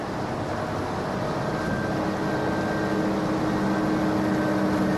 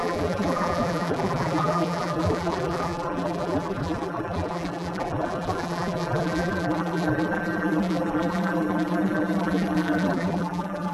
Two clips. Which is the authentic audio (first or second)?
first